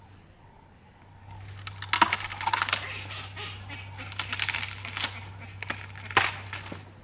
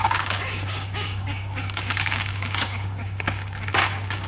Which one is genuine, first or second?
first